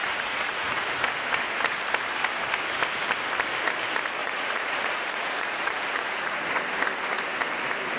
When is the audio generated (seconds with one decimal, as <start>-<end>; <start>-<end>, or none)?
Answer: 0.0-0.9; 4.2-6.6